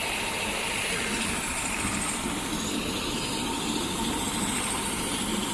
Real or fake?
real